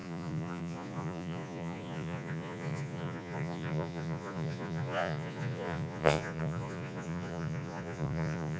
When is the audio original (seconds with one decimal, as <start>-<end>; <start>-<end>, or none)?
none